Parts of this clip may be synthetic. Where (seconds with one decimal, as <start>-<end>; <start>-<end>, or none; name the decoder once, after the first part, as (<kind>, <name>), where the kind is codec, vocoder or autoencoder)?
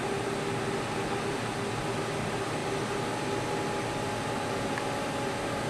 none